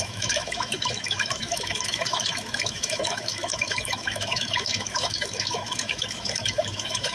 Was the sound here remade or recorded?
remade